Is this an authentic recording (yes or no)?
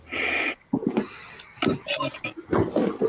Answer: yes